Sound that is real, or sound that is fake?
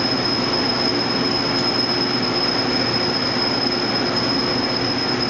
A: real